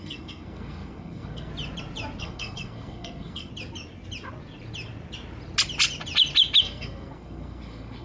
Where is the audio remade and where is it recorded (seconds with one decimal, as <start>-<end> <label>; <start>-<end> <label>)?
0.0-1.5 remade; 1.5-2.2 recorded; 2.2-3.5 remade; 3.5-6.6 recorded; 6.6-8.0 remade